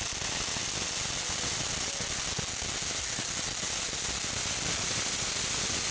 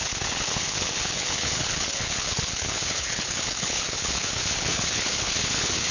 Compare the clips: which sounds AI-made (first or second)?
second